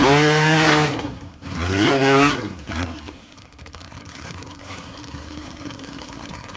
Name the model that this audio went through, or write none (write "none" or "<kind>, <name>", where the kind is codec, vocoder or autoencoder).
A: codec, SNAC